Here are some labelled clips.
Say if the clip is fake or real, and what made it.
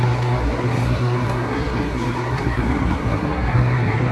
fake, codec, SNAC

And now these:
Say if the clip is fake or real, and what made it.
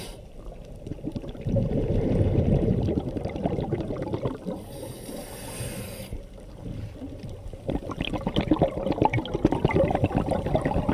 real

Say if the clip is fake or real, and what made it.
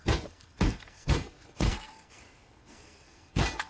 fake, codec, SNAC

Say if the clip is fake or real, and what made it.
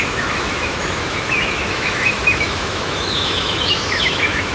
fake, autoencoder, DAC-VAE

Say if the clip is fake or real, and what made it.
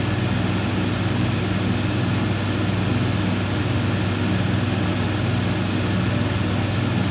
real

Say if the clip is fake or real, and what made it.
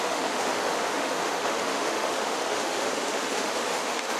fake, autoencoder, DAC-VAE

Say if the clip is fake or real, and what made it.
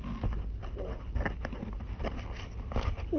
real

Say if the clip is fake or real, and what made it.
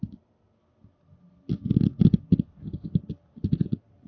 real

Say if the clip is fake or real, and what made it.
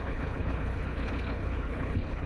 fake, codec, HILCodec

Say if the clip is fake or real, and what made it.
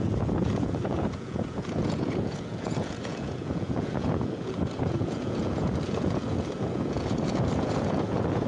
fake, vocoder, Vocos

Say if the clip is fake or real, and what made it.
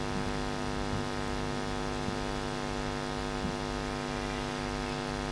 real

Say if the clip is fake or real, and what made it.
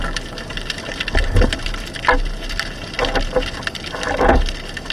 real